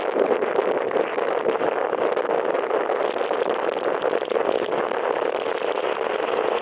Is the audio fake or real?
real